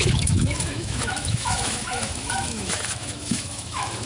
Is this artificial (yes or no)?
yes